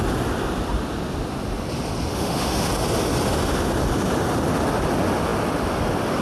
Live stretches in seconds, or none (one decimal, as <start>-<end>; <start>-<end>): 0.0-2.1; 2.7-6.2